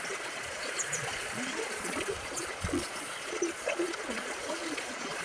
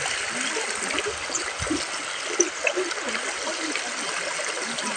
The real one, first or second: second